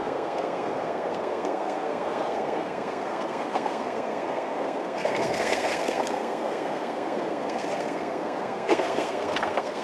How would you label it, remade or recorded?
remade